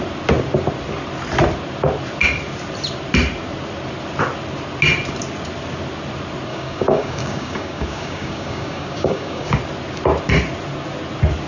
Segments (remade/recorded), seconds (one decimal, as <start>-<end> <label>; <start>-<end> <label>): 0.0-6.5 recorded; 6.5-9.6 remade; 9.6-11.5 recorded